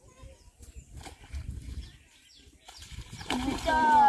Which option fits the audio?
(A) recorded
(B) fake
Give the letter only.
B